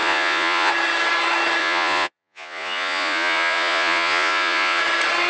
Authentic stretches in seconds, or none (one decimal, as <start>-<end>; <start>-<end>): 0.7-1.6; 4.8-5.3